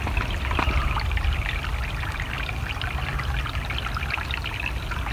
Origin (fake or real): real